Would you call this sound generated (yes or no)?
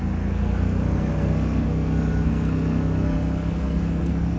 yes